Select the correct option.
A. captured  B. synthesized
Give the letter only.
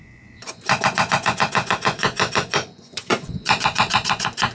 B